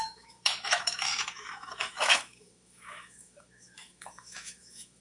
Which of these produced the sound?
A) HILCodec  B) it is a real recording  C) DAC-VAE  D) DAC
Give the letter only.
C